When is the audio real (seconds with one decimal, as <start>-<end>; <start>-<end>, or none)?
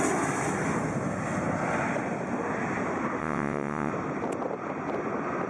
0.0-3.2; 3.9-5.5